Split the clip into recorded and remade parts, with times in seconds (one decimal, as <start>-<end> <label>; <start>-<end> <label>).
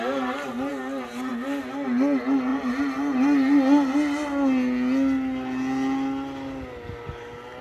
0.0-7.6 recorded